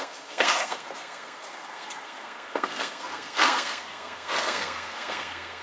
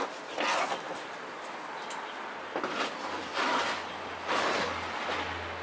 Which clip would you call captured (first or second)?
second